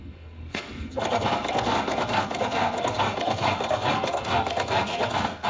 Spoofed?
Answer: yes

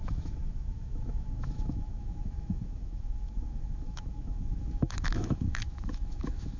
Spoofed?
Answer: yes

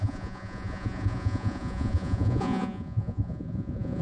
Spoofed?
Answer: yes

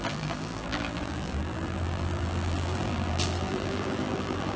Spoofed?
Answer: yes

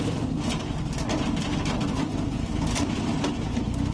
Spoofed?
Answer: no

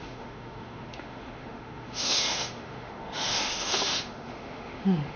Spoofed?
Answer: yes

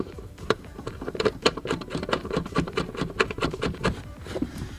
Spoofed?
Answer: yes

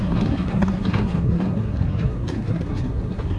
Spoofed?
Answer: yes